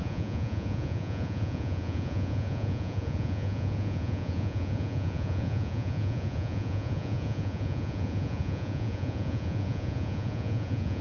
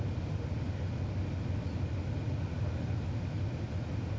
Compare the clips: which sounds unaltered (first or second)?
second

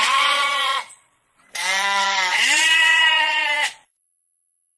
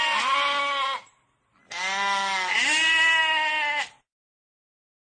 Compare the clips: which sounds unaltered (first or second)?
second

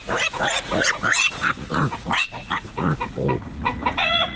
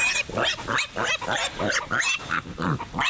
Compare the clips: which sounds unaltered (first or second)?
second